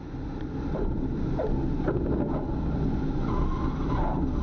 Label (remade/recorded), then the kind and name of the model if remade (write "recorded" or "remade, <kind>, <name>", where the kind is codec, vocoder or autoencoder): recorded